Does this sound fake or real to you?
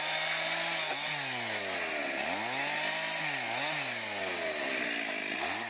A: real